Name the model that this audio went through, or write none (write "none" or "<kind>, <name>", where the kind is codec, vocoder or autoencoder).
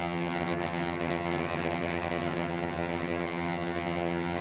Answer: vocoder, HiFi-GAN